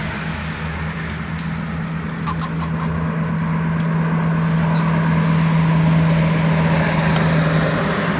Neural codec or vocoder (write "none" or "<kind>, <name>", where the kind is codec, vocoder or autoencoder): none